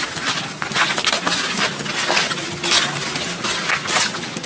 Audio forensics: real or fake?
real